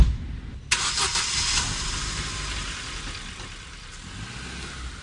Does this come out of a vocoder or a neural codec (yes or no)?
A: no